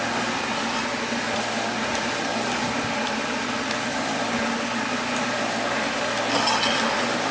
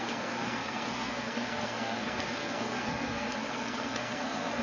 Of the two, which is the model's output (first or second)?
second